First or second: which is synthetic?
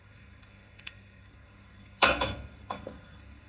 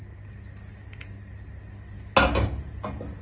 first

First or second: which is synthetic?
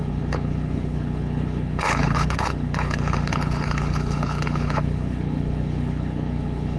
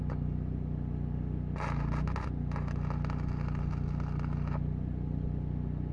first